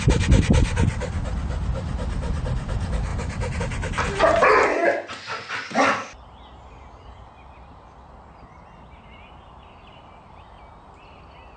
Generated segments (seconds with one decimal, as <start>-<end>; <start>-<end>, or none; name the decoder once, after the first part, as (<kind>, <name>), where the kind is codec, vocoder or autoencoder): none